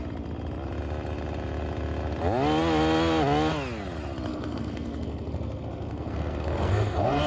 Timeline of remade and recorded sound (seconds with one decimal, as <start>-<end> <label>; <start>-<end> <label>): 0.0-4.3 recorded; 4.3-7.3 remade